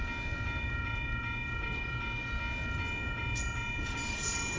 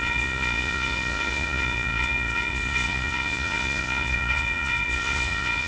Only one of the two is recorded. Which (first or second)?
first